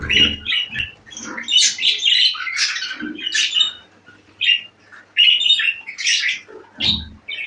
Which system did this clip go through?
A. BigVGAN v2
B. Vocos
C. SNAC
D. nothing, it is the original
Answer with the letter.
D